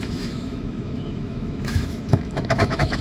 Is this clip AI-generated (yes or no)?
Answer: yes